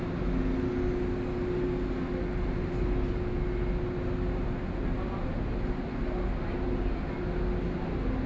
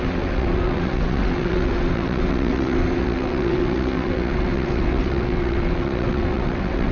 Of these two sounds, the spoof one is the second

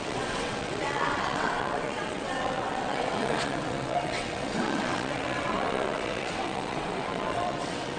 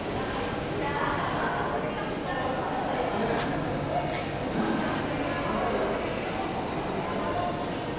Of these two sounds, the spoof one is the first